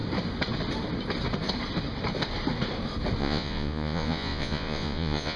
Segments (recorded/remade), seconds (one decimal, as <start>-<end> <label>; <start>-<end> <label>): 0.0-3.2 recorded; 3.2-5.4 remade